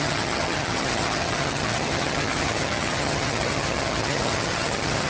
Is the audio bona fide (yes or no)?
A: no